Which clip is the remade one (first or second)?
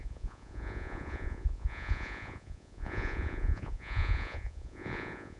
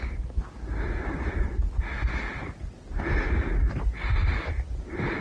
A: first